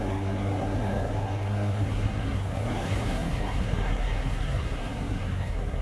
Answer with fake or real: fake